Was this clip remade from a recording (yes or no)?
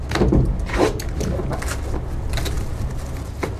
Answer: no